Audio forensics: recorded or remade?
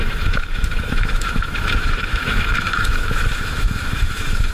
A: remade